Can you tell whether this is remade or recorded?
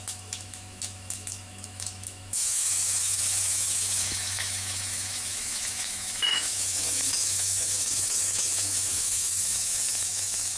remade